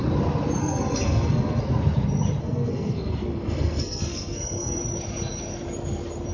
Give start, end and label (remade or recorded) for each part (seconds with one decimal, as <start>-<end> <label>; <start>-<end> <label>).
0.0-0.6 recorded; 0.6-1.6 remade; 1.6-2.4 recorded; 2.4-4.8 remade; 4.8-6.3 recorded